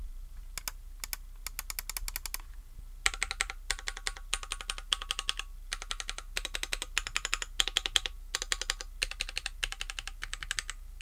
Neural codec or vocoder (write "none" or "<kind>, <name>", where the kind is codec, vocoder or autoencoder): none